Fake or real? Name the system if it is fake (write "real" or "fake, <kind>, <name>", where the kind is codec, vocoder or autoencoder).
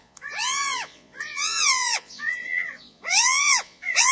fake, vocoder, Vocos